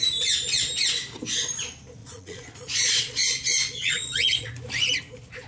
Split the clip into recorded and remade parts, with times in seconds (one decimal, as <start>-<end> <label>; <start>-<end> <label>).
0.0-2.0 recorded; 2.0-4.5 remade; 4.5-5.5 recorded